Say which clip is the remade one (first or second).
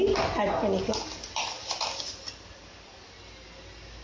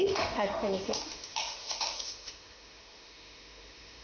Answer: second